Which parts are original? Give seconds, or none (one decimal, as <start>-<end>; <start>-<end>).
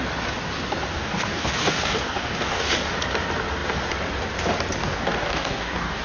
0.0-0.9; 2.7-4.8